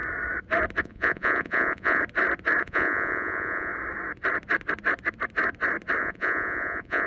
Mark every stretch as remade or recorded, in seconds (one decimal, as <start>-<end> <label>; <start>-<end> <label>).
0.0-0.8 recorded; 0.8-2.0 remade; 2.0-2.6 recorded; 2.6-3.7 remade; 3.7-6.0 recorded; 6.0-7.1 remade